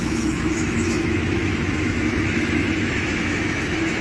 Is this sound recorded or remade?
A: remade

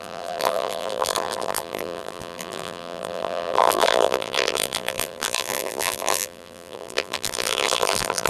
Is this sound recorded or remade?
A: remade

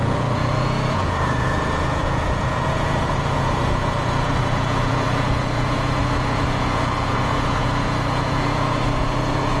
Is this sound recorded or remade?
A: remade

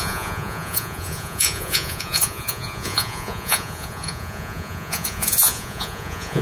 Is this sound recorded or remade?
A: remade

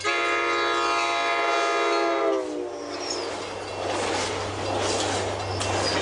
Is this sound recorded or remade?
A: recorded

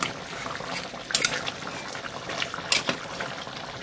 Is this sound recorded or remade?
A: recorded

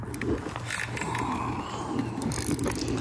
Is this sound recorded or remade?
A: recorded